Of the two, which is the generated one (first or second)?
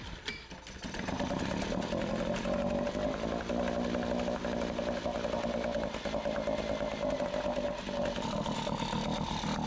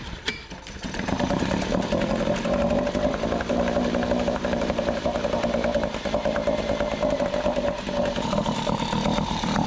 second